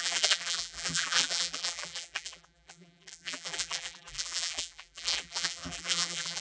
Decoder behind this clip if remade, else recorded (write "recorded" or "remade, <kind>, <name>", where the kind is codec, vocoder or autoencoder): remade, vocoder, BigVGAN v2